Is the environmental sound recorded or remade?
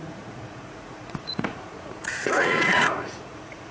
remade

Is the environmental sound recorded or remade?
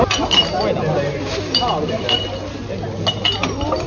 recorded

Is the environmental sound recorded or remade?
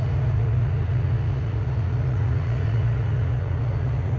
remade